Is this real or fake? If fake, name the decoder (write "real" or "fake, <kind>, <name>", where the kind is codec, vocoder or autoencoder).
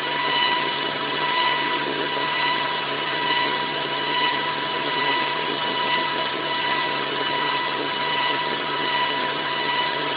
fake, vocoder, HiFi-GAN